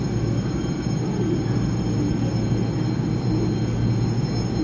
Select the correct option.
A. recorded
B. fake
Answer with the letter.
A